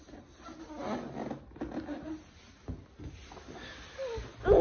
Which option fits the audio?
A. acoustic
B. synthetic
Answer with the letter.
A